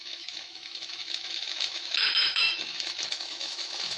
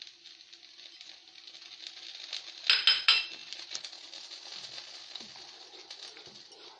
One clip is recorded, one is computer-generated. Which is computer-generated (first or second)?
first